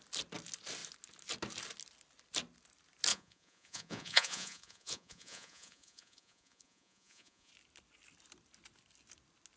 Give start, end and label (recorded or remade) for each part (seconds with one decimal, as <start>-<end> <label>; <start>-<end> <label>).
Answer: 0.0-3.1 recorded; 3.1-7.5 remade; 7.5-9.6 recorded